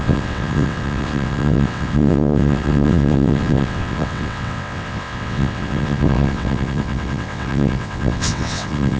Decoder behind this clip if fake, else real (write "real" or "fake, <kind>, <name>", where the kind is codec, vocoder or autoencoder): fake, vocoder, WaveNeXt